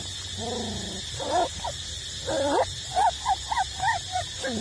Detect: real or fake real